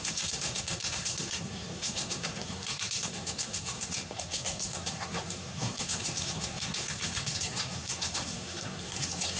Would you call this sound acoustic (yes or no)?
no